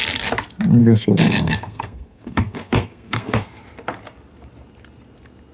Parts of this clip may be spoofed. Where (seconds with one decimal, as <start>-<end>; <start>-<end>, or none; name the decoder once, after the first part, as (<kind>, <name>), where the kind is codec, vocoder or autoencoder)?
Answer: 0.8-3.6 (codec, SNAC)